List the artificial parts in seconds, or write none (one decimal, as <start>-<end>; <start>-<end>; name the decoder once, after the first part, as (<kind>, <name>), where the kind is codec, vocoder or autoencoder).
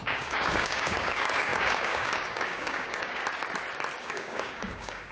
0.0-3.2 (codec, DAC); 4.0-5.1